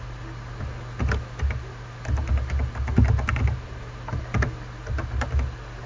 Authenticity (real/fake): real